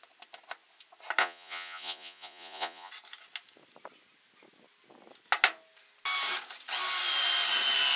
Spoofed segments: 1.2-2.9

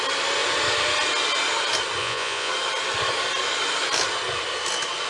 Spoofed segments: 2.0-2.5

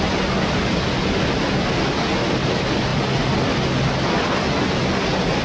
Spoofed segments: none

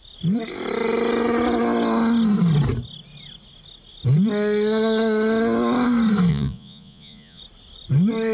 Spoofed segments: 6.3-7.4

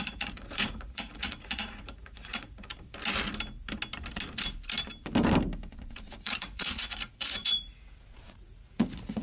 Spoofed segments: 0.0-2.7; 5.7-9.2

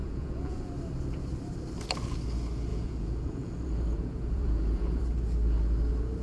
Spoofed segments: 0.0-0.7; 2.7-5.0